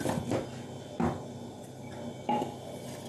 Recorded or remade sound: recorded